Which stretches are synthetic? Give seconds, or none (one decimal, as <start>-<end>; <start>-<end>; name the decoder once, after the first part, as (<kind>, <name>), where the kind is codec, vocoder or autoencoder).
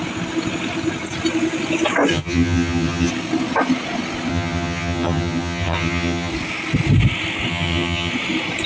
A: 2.1-3.1 (vocoder, HiFi-GAN); 4.3-6.3; 7.5-8.1